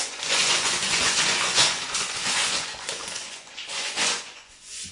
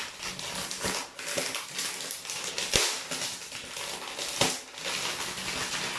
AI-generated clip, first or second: first